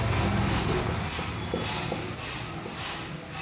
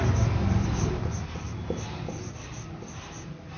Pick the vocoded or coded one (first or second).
second